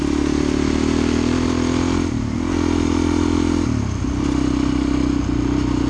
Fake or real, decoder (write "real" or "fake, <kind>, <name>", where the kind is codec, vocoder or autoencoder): real